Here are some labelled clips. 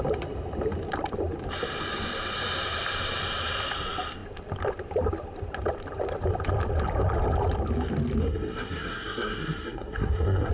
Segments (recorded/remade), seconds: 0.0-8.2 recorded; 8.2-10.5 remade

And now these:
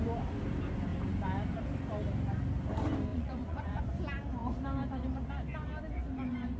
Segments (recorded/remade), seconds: 0.0-3.1 recorded; 3.1-3.9 remade; 3.9-6.6 recorded

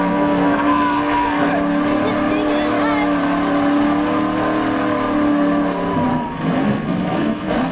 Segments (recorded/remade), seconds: 0.0-1.5 remade; 1.5-6.1 recorded; 6.1-7.7 remade

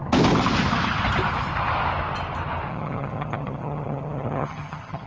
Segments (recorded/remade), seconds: 0.0-2.7 recorded; 2.7-5.1 remade